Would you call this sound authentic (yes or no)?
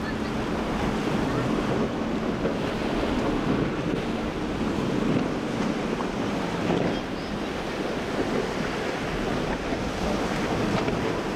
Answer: yes